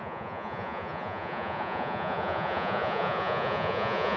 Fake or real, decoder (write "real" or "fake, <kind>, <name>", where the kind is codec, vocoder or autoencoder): fake, vocoder, Vocos